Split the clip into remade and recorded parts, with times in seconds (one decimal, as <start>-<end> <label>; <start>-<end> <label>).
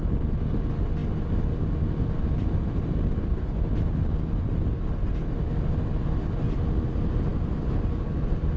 0.0-8.6 recorded